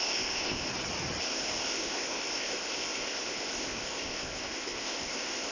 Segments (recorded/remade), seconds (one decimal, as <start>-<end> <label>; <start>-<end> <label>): 0.0-0.7 remade; 0.7-1.2 recorded; 1.2-5.5 remade